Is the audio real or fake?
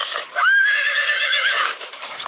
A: fake